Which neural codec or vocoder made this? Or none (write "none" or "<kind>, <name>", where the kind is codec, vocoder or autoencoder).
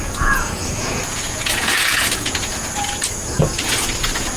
vocoder, Vocos